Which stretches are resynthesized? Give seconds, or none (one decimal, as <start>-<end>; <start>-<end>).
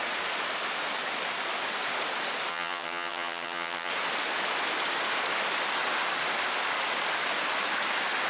2.5-3.9